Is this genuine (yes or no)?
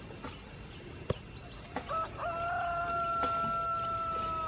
yes